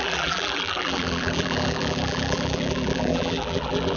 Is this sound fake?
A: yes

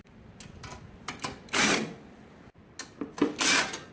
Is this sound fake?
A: no